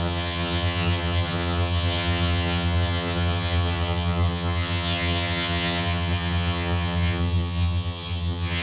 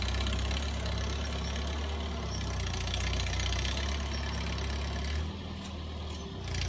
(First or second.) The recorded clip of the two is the second